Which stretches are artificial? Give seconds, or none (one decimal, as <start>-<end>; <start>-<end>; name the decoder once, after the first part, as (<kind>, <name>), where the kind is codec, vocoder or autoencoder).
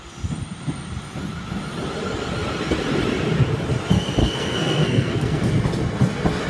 4.2-5.5 (codec, SNAC)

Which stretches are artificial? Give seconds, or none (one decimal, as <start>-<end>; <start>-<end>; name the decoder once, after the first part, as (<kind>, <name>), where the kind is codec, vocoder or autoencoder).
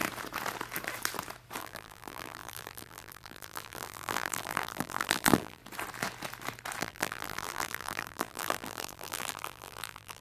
1.6-5.6 (vocoder, BigVGAN v2); 6.8-10.2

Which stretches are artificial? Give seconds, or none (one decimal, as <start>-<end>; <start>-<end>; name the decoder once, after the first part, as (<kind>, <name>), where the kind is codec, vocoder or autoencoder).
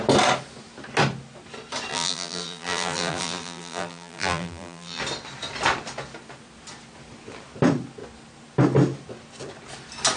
1.9-5.0 (vocoder, BigVGAN v2)